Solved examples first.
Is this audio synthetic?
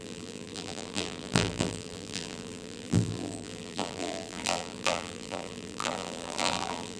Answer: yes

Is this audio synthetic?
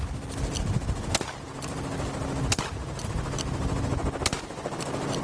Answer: no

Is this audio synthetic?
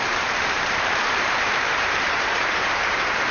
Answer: yes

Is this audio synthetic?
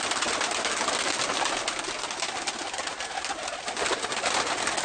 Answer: no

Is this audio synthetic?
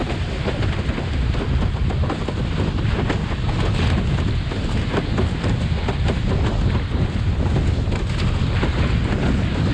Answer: no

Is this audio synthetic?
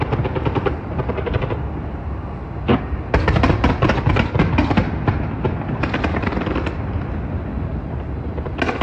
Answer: no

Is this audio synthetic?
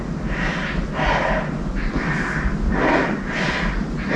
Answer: no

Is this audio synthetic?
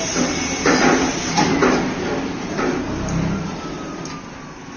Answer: no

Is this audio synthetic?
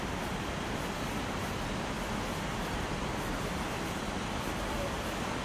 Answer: no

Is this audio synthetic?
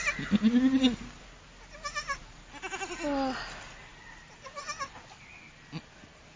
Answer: no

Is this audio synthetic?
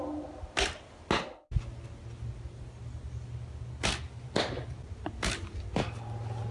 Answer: no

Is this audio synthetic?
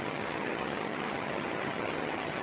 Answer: yes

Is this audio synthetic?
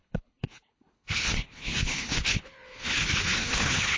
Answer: yes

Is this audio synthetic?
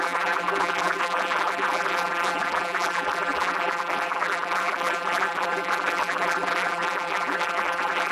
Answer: yes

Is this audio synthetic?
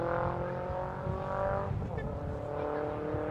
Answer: no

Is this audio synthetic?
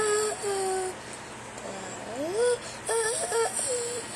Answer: no